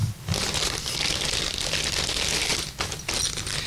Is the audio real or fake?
real